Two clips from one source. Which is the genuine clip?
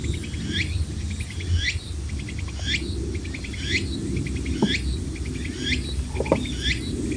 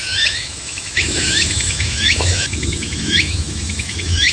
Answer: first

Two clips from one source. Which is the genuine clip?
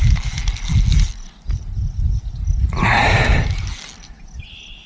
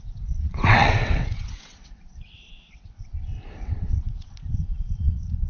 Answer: first